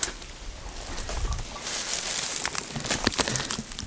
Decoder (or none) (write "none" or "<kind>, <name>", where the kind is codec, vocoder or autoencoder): none